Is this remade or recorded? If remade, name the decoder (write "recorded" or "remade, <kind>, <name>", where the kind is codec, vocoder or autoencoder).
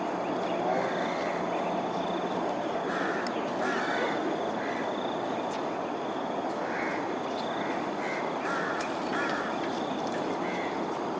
recorded